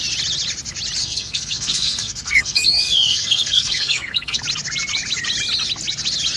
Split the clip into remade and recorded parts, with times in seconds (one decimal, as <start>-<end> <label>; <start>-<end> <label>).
0.0-1.0 recorded; 1.0-4.4 remade; 4.4-6.4 recorded

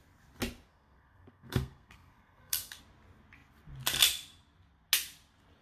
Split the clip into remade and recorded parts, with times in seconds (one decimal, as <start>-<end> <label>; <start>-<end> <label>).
0.0-0.7 recorded; 0.7-2.8 remade; 2.8-5.6 recorded

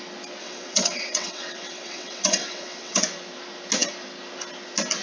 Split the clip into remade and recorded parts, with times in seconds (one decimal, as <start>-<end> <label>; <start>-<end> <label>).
0.0-0.4 recorded; 0.4-3.0 remade; 3.0-5.0 recorded

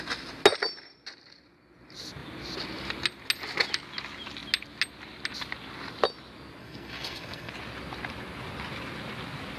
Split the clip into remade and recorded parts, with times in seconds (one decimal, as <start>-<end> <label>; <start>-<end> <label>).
0.0-6.6 recorded; 6.6-7.5 remade; 7.5-9.6 recorded